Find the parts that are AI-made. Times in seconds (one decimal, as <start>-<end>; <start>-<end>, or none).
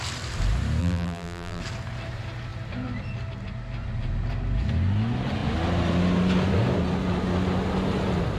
0.8-1.6